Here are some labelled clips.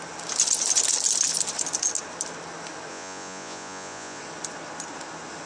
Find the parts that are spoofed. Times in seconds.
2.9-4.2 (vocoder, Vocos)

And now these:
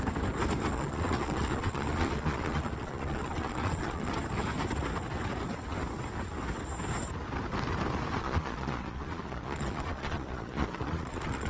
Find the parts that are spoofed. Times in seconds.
0.7-4.1 (vocoder, Vocos); 8.2-11.5